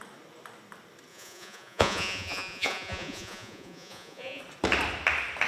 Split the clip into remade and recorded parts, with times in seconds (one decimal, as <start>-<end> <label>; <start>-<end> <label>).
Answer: 0.0-1.1 recorded; 1.1-4.4 remade; 4.4-5.5 recorded